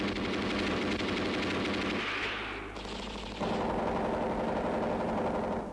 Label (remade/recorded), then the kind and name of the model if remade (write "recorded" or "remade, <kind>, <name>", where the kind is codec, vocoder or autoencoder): recorded